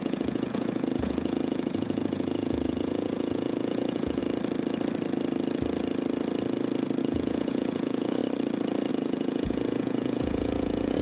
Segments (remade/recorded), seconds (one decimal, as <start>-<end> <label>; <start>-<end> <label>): 0.0-4.2 remade; 4.2-7.0 recorded; 7.0-8.2 remade; 8.2-8.9 recorded; 8.9-11.0 remade